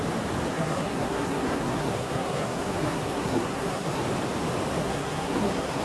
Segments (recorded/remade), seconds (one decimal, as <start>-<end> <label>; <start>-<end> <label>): 0.0-0.5 recorded; 0.5-4.0 remade; 4.0-4.8 recorded; 4.8-5.8 remade